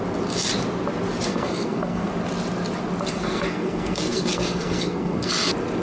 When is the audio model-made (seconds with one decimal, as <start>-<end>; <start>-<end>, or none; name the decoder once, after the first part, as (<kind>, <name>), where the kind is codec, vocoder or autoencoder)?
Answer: 1.3-2.1 (codec, SNAC); 3.1-5.3